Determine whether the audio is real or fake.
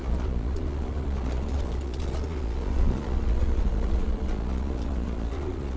fake